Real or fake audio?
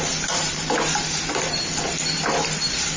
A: real